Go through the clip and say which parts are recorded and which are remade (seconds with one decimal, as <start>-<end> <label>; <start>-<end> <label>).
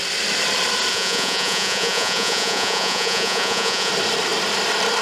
0.0-0.9 recorded; 0.9-3.9 remade; 3.9-5.0 recorded